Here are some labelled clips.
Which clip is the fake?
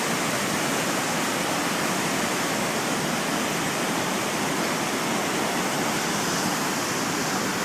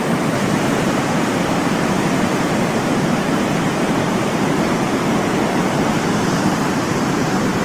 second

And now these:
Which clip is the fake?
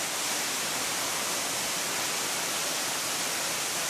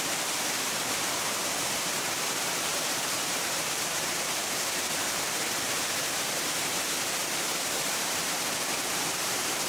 second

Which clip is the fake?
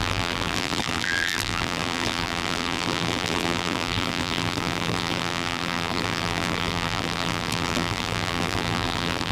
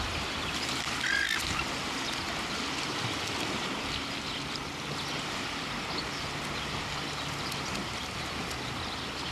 first